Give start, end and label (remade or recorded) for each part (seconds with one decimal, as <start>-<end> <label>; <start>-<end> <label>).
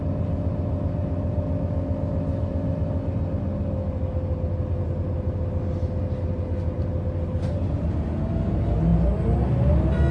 0.0-10.1 recorded